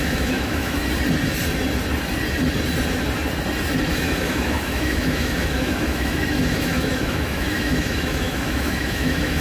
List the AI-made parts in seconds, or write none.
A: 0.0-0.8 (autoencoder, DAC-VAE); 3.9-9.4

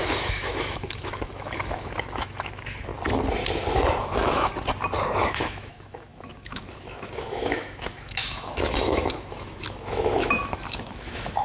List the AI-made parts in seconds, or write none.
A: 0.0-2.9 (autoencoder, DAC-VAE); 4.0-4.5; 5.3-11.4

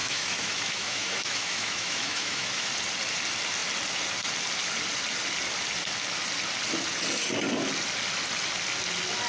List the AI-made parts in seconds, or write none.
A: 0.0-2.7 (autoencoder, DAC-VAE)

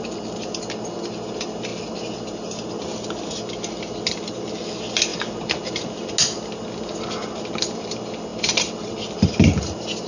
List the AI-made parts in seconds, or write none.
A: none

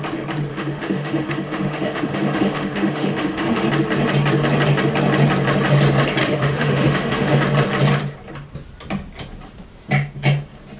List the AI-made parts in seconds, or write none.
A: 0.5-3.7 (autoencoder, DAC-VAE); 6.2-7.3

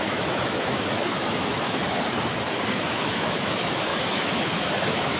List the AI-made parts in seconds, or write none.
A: 0.0-1.8 (autoencoder, DAC-VAE); 2.7-5.2